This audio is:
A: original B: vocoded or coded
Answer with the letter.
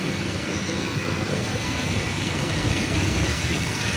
B